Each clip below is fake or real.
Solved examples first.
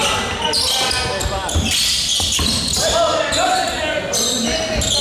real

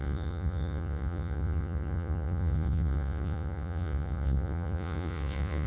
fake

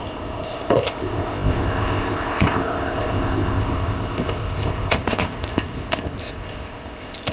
fake